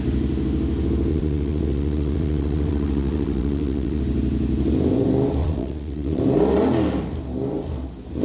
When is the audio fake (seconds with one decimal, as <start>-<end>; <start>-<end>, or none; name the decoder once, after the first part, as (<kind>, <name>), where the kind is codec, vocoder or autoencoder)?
1.1-4.0 (vocoder, WaveNeXt); 5.4-6.2